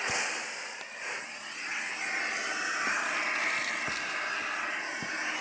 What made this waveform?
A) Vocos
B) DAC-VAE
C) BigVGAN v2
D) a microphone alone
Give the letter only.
D